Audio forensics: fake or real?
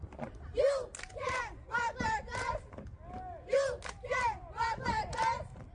real